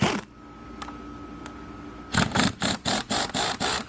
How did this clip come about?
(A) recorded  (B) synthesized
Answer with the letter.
A